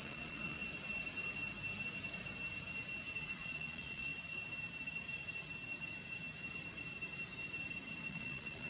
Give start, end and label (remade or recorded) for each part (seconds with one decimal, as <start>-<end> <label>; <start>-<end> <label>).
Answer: 0.0-0.6 remade; 0.6-3.2 recorded; 3.2-4.1 remade; 4.1-8.1 recorded; 8.1-8.7 remade